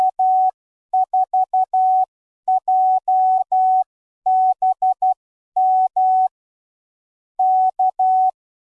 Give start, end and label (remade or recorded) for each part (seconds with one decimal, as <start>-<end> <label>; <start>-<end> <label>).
0.0-8.6 recorded